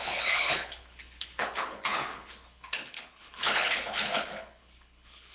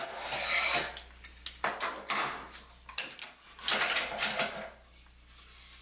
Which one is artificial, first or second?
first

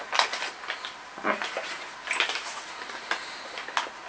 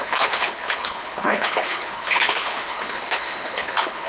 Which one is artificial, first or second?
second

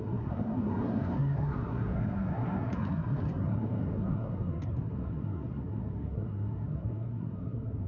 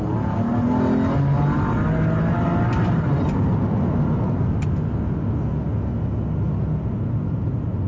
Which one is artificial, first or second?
first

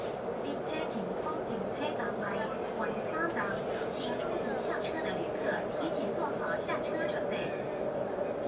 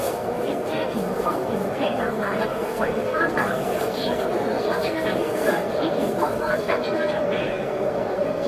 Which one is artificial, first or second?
second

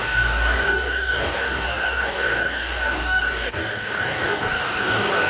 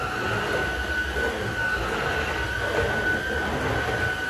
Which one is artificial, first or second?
first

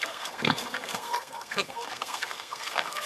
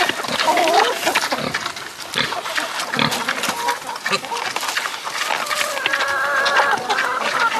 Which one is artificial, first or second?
first